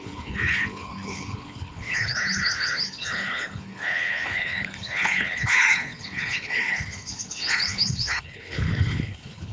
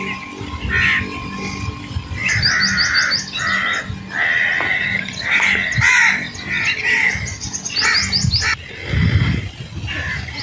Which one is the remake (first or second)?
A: first